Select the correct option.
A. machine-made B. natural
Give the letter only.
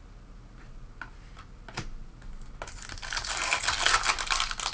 B